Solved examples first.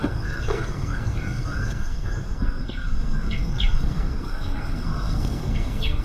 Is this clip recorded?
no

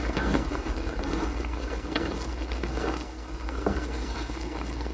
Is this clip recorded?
no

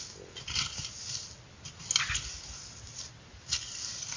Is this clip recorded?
yes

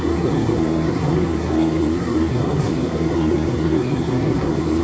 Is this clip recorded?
no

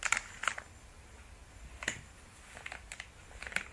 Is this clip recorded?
yes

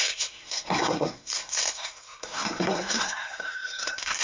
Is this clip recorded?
no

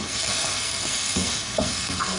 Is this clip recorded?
no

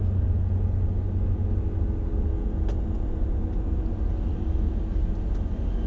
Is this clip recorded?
yes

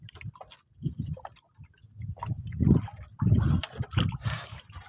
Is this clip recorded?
yes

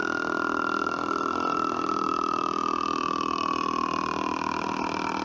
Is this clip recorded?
yes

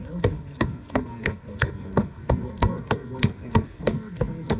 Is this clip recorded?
no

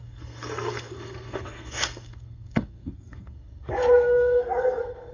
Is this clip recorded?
no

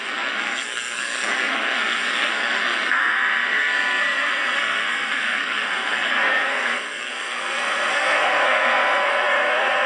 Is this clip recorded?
no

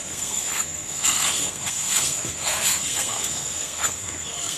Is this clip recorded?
no